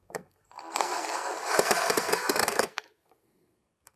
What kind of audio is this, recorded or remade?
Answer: remade